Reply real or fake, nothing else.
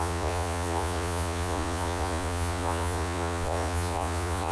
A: fake